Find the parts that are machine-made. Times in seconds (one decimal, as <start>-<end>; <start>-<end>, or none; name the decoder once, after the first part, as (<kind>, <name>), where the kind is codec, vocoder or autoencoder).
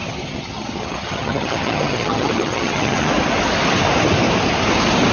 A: 0.0-3.1 (vocoder, HiFi-GAN)